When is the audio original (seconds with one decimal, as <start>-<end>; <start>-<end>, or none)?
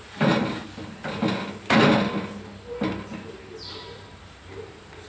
0.6-3.7